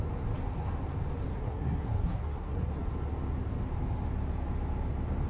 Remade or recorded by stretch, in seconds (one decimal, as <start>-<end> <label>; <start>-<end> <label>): 0.0-1.3 recorded; 1.3-2.8 remade; 2.8-5.3 recorded